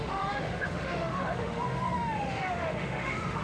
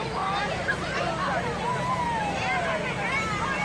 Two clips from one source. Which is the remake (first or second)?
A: first